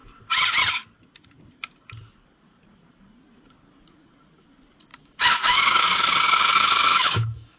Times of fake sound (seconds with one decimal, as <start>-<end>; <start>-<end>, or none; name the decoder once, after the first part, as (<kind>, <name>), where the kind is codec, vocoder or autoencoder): 4.9-7.6 (autoencoder, DAC-VAE)